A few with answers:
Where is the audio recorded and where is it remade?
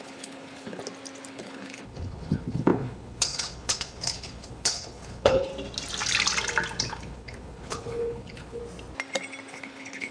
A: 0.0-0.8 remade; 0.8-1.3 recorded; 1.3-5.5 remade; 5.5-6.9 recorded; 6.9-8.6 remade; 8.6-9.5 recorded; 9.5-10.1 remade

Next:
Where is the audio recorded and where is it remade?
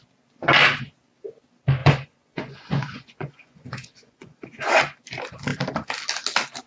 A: 0.0-1.8 recorded; 1.8-4.7 remade; 4.7-6.7 recorded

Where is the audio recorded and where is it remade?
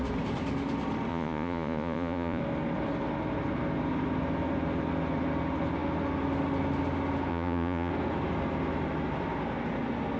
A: 0.0-1.1 recorded; 1.1-2.4 remade; 2.4-7.3 recorded; 7.3-7.9 remade; 7.9-10.2 recorded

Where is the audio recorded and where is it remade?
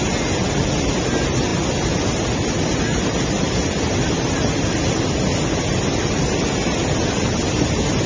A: 0.0-8.1 recorded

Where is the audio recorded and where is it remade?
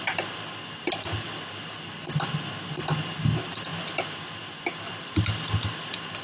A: 0.0-6.2 recorded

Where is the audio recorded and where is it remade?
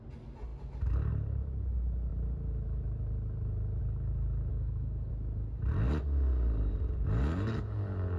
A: 0.0-4.5 recorded; 4.5-5.1 remade; 5.1-8.2 recorded